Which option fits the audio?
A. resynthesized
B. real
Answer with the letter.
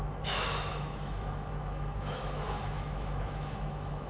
A